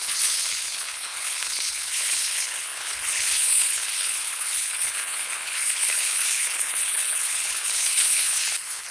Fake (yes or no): yes